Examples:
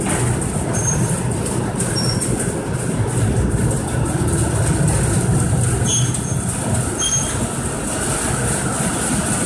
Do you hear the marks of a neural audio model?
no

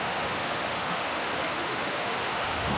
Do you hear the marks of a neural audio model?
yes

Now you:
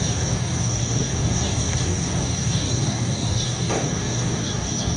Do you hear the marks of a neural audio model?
yes